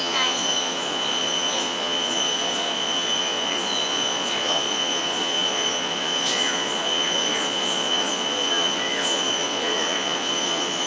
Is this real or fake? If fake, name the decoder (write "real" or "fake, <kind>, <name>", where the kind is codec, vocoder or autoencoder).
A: fake, vocoder, Vocos